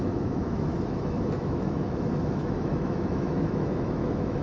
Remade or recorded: remade